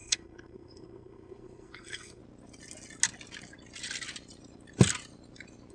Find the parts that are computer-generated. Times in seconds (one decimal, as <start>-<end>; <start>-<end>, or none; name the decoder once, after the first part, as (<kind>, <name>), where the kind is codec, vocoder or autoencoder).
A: 0.0-2.2 (codec, SNAC)